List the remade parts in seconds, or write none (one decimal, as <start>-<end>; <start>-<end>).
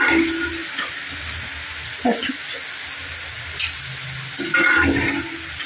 0.0-2.2; 3.8-5.7